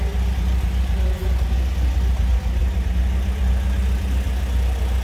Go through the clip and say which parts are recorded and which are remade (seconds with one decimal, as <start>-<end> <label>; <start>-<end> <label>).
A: 0.0-5.0 recorded